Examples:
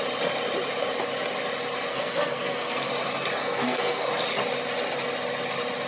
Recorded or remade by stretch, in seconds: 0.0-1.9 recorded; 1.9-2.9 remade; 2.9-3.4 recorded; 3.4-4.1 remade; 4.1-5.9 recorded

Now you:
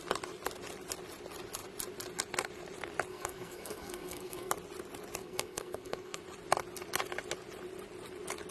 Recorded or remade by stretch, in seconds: 0.0-3.1 recorded; 3.1-4.5 remade; 4.5-5.2 recorded; 5.2-6.2 remade; 6.2-8.5 recorded

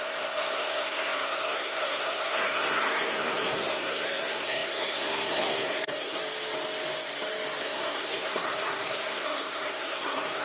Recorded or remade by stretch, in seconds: 0.0-6.2 remade; 6.2-7.6 recorded; 7.6-10.4 remade

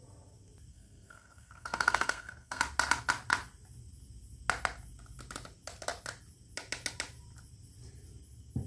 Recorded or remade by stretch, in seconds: 0.0-0.7 recorded; 0.7-2.6 remade; 2.6-8.7 recorded

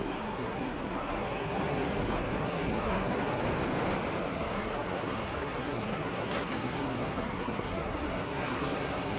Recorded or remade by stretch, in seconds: 0.0-3.4 remade; 3.4-4.2 recorded; 4.2-9.2 remade

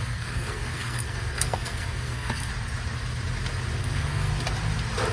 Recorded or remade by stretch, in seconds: 0.0-2.5 remade; 2.5-3.8 recorded; 3.8-4.3 remade; 4.3-5.1 recorded